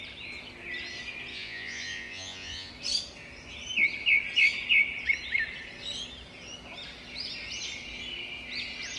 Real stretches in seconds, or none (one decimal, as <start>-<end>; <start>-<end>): 0.0-1.3; 2.7-9.0